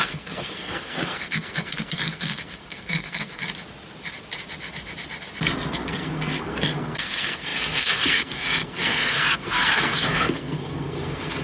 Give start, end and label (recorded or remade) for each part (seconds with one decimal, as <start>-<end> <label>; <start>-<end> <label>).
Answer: 0.0-3.4 remade; 3.4-5.7 recorded; 5.7-11.4 remade